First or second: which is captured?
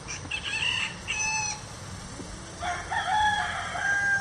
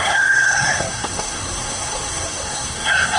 first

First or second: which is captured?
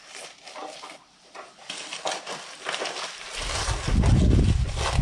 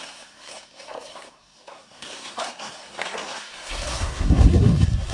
first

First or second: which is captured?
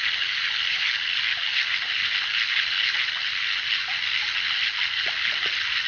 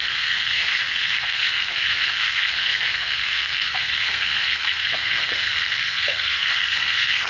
first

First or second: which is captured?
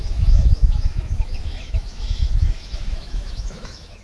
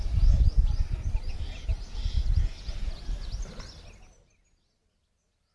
second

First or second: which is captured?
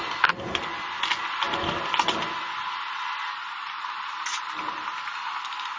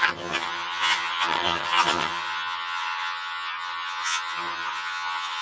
first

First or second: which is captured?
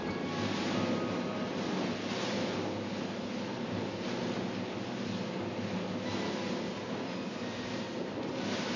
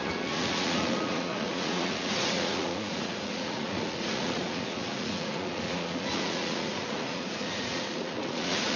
first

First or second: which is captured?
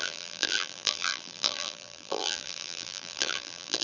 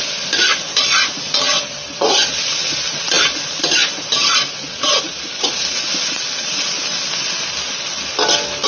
second